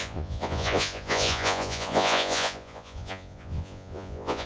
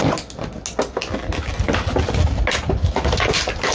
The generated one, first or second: first